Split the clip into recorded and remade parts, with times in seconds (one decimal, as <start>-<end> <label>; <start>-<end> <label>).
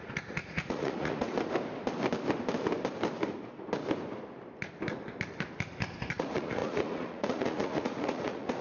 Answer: 0.0-1.3 remade; 1.3-6.1 recorded; 6.1-8.6 remade